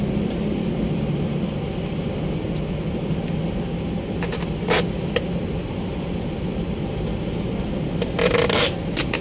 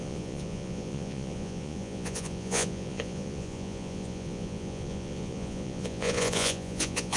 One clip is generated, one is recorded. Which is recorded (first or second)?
first